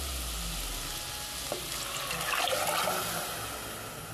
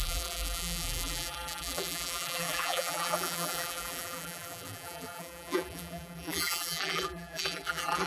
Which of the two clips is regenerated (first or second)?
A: second